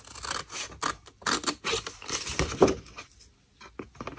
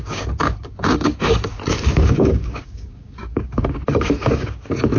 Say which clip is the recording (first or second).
first